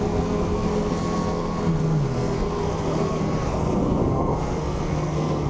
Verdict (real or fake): fake